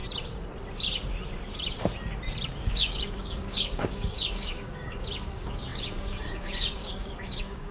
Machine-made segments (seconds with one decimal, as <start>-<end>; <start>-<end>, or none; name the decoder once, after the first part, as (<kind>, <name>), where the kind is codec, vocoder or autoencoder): 2.6-7.7 (codec, DAC)